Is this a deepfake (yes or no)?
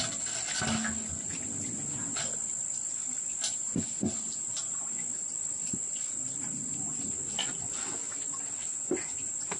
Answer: no